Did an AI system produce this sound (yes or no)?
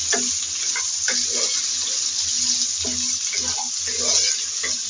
no